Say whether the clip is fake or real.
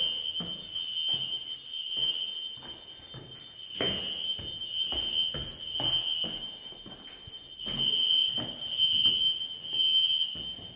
real